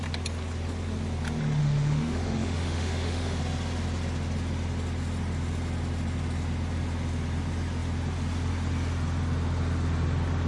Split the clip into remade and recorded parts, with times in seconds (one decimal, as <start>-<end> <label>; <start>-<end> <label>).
0.0-1.6 recorded; 1.6-3.4 remade; 3.4-10.5 recorded